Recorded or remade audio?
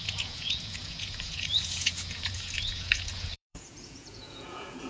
remade